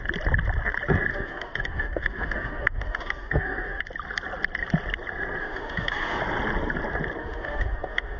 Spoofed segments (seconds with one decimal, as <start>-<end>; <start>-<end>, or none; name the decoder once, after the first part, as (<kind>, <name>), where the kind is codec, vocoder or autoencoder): 1.1-3.8 (autoencoder, DAC-VAE); 5.4-6.2; 7.2-8.2